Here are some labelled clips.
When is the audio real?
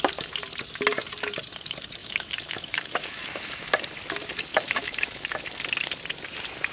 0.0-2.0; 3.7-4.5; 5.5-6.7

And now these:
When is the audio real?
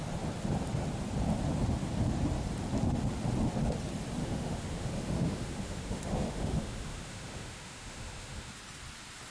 0.0-4.2; 8.5-9.3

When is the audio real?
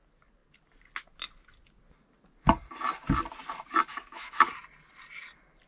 0.0-3.9; 4.5-5.7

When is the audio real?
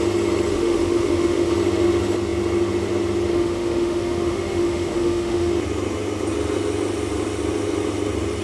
0.0-0.5; 1.5-3.3; 5.5-8.4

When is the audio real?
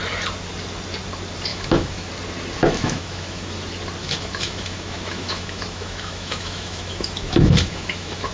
0.0-1.5; 2.1-2.6; 3.6-4.0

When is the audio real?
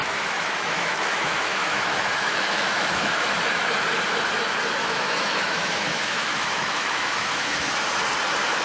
3.3-4.8; 7.7-8.6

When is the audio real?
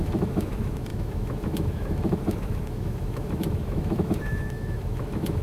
none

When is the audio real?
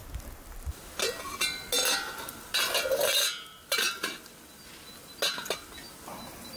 0.0-6.6